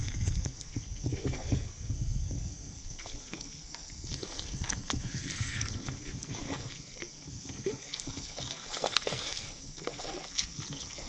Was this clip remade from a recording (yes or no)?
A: yes